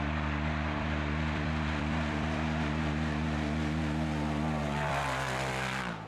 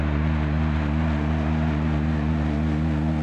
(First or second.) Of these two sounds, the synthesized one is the first